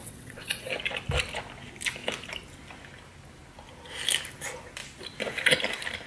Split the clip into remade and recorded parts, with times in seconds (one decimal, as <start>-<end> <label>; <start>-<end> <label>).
0.0-0.7 remade; 0.7-6.1 recorded

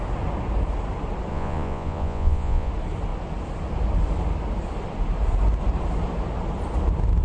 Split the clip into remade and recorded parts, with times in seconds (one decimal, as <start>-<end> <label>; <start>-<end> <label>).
0.0-1.3 recorded; 1.3-2.7 remade; 2.7-7.2 recorded

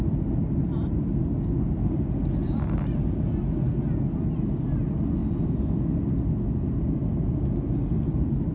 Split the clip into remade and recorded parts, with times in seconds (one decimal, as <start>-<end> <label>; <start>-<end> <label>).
0.0-8.5 recorded

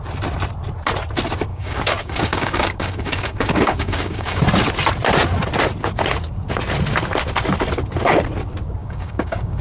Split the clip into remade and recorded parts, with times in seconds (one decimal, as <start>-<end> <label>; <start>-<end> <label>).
0.0-1.5 recorded; 1.5-4.4 remade; 4.4-8.8 recorded; 8.8-9.6 remade